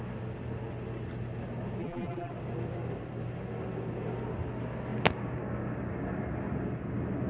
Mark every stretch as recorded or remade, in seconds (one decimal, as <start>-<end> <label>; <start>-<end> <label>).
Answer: 0.0-1.8 recorded; 1.8-2.3 remade; 2.3-7.3 recorded